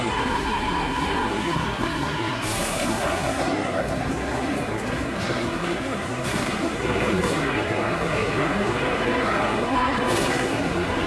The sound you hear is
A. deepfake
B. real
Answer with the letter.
A